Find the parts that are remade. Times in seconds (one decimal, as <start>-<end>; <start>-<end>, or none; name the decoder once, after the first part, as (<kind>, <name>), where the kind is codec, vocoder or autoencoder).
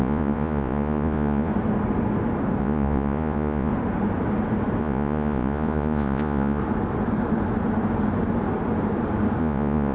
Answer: 0.0-1.5 (vocoder, Vocos); 2.6-3.7; 4.8-6.6; 9.4-9.9